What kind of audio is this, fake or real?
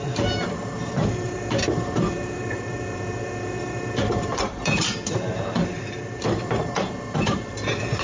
fake